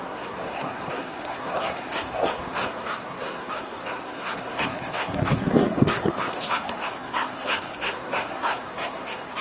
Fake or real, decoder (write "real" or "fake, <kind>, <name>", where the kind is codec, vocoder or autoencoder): fake, codec, SNAC